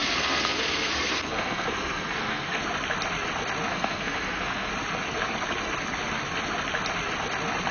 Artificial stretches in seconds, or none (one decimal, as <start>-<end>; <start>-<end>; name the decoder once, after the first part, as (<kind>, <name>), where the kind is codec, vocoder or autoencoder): 0.0-2.6 (codec, SNAC); 3.7-4.7